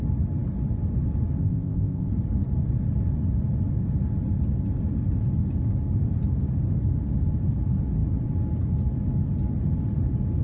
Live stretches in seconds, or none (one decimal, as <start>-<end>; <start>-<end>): 0.0-1.4; 2.1-10.4